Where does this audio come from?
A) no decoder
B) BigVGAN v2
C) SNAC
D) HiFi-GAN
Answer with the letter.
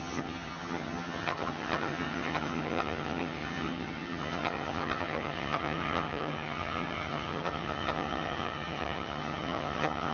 D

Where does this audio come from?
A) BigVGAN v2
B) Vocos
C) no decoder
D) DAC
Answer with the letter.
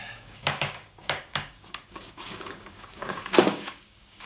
D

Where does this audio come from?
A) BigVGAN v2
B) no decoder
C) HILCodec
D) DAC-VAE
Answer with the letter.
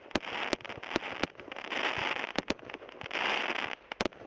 B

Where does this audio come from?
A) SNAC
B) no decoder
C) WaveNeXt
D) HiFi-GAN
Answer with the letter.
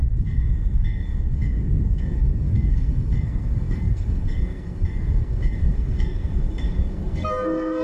A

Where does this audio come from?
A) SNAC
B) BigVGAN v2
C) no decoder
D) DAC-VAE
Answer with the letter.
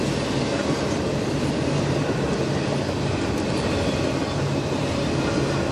C